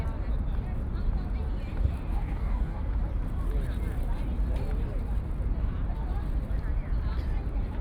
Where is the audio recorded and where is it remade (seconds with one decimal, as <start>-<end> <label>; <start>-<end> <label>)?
0.0-2.1 recorded; 2.1-2.8 remade; 2.8-7.8 recorded